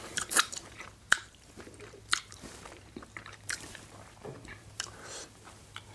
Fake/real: fake